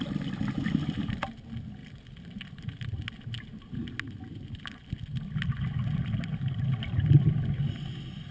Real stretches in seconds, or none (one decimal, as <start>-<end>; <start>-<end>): 0.0-8.3